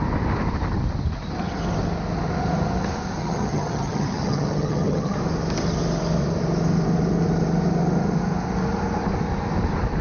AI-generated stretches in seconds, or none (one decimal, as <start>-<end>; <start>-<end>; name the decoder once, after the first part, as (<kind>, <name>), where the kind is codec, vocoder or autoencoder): 3.2-5.2 (vocoder, HiFi-GAN)

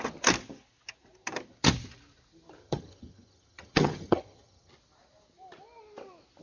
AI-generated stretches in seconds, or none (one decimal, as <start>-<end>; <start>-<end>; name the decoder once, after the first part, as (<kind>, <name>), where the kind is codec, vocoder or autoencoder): 2.6-4.7 (vocoder, HiFi-GAN)

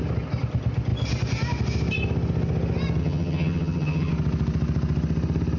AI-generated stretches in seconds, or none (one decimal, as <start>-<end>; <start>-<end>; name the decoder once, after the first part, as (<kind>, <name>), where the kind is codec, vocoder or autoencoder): 3.0-4.1 (vocoder, HiFi-GAN)

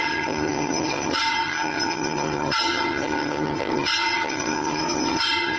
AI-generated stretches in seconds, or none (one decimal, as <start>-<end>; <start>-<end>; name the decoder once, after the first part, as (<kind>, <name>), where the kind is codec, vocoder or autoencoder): 0.0-5.6 (vocoder, HiFi-GAN)

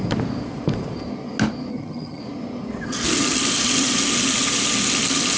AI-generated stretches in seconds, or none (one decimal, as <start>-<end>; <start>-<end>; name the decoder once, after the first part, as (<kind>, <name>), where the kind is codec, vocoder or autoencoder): 1.7-2.2 (vocoder, HiFi-GAN)

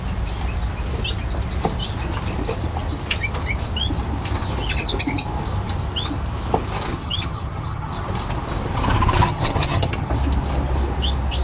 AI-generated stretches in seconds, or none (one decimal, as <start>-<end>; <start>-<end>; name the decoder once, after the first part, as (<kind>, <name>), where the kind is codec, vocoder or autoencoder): 6.9-7.9 (vocoder, HiFi-GAN); 9.2-10.1

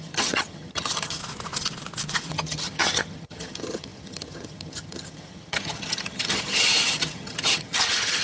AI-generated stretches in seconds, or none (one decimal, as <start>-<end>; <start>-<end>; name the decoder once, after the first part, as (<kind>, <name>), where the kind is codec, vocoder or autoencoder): 0.0-1.2 (vocoder, HiFi-GAN); 2.3-8.2